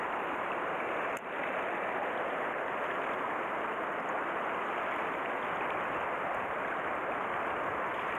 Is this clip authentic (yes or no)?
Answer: yes